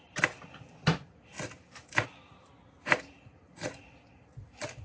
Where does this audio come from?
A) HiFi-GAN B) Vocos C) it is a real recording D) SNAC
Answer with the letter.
C